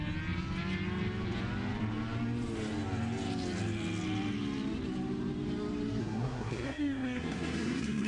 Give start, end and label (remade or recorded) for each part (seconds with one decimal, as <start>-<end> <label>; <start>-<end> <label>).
0.0-6.0 recorded; 6.0-8.1 remade